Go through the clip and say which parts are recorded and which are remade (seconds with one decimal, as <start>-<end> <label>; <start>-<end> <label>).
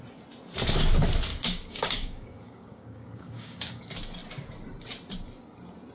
0.0-1.3 recorded; 1.3-3.8 remade; 3.8-5.9 recorded